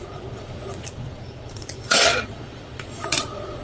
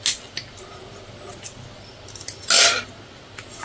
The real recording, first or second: second